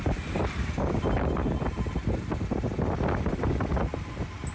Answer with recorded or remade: recorded